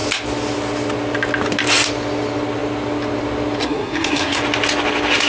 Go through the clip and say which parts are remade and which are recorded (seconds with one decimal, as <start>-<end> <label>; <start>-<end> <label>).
0.0-3.6 recorded; 3.6-4.4 remade; 4.4-5.3 recorded